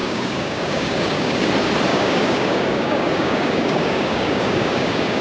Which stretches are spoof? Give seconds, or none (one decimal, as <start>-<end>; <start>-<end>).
0.0-1.5; 1.9-5.2